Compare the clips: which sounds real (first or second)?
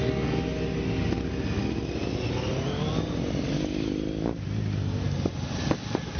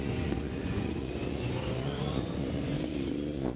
first